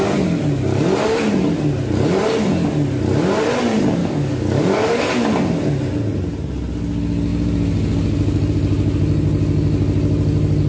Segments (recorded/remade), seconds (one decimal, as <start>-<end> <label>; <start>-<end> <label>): 0.0-4.0 recorded; 4.0-5.0 remade; 5.0-10.7 recorded